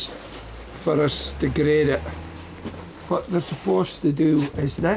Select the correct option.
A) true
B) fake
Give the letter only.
A